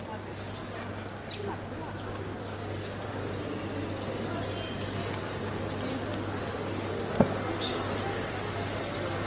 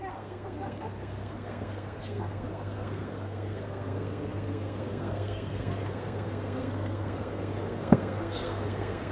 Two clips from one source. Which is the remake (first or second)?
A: second